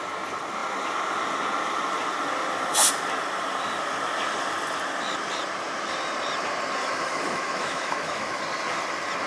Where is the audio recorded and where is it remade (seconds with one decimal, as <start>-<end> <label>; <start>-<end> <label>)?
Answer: 0.0-6.8 recorded; 6.8-8.4 remade; 8.4-9.3 recorded